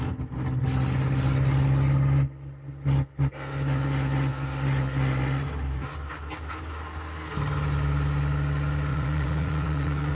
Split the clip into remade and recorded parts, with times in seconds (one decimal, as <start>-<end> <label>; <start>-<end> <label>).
0.0-8.9 recorded; 8.9-10.1 remade